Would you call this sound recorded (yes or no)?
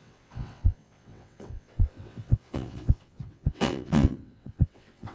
no